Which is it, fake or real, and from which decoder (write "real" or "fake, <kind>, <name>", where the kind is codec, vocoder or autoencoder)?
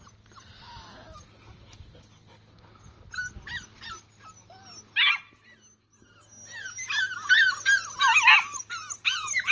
real